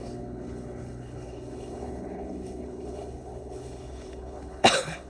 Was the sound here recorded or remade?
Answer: remade